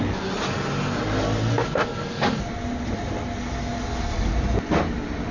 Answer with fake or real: real